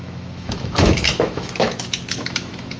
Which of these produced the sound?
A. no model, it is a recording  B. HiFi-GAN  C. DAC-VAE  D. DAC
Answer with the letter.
C